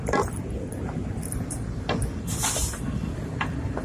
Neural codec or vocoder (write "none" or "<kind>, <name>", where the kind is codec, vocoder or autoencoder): none